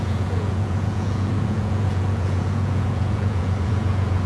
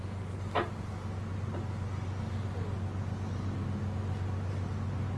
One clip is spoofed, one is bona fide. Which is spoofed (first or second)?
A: first